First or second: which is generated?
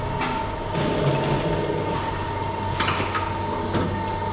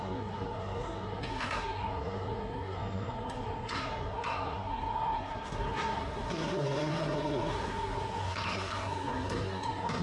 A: second